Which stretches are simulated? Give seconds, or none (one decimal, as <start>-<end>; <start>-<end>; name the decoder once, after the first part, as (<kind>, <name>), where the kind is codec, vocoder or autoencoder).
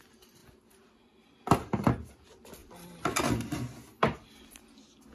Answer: none